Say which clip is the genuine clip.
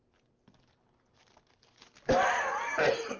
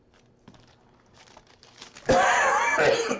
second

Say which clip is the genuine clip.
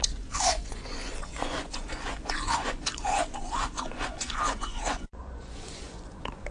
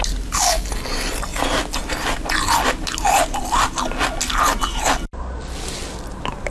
second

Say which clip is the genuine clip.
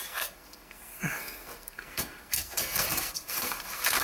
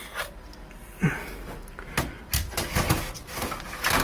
second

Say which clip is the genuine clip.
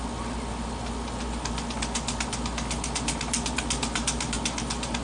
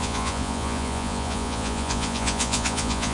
first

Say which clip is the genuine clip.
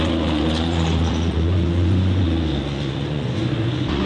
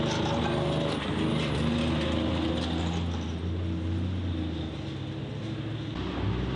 second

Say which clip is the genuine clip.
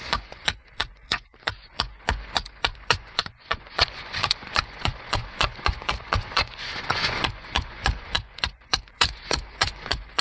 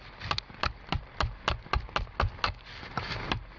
second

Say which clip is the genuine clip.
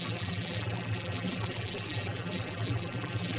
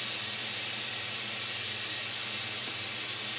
second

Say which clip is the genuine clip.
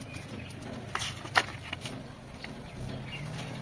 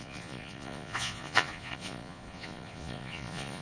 first